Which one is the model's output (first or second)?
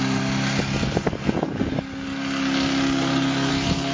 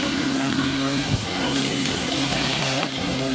second